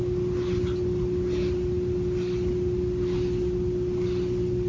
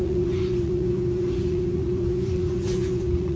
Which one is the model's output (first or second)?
second